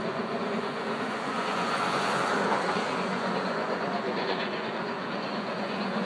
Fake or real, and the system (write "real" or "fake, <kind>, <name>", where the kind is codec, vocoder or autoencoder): fake, vocoder, Vocos